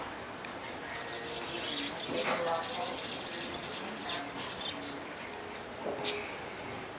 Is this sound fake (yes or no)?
no